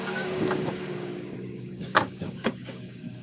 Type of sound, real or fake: fake